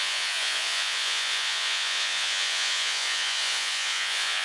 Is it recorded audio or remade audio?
remade